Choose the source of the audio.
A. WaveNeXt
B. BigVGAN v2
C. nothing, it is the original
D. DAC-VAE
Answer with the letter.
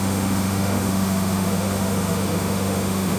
D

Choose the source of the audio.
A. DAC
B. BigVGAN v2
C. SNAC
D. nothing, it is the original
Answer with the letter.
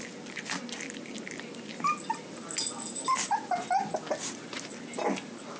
D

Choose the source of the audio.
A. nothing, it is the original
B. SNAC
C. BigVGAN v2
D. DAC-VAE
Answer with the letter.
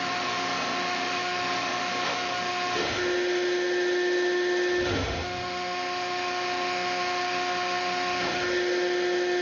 D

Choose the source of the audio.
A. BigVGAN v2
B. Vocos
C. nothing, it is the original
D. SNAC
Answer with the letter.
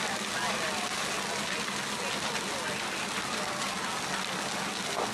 C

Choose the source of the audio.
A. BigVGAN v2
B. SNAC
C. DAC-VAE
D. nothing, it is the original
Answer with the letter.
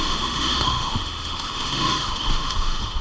C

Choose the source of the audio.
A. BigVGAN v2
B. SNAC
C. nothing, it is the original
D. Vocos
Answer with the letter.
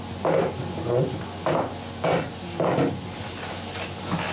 C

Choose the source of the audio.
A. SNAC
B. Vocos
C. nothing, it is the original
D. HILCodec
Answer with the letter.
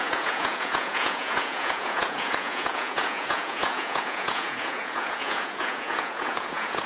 B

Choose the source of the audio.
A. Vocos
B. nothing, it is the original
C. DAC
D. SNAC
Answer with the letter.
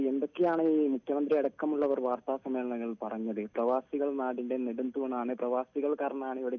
B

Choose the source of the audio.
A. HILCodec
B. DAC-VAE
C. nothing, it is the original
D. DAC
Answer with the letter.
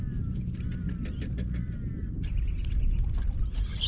C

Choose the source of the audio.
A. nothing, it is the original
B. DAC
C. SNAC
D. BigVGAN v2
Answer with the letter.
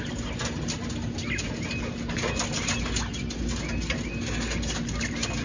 A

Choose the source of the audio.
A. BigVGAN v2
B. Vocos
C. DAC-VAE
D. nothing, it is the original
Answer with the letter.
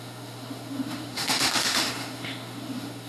C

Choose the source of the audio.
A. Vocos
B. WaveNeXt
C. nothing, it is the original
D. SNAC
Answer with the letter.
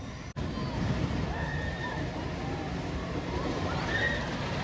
C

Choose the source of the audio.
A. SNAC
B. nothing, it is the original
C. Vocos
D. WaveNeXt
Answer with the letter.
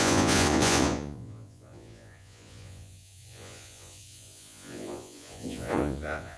C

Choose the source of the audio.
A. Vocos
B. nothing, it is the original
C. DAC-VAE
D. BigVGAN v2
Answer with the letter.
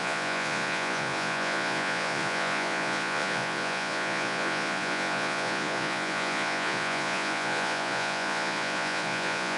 A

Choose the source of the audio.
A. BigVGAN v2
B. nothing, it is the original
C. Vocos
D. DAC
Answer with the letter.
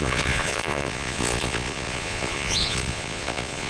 C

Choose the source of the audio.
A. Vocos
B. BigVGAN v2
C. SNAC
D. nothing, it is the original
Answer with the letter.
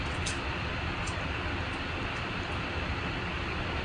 D